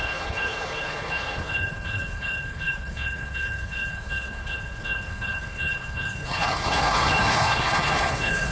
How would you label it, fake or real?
fake